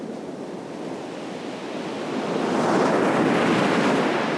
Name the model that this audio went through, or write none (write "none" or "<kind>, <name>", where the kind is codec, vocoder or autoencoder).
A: none